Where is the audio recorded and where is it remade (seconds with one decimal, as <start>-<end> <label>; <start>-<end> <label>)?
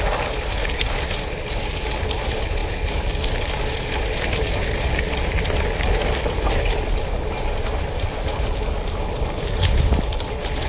0.0-0.6 recorded; 0.6-1.1 remade; 1.1-10.7 recorded